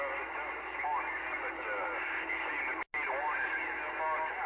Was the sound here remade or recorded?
recorded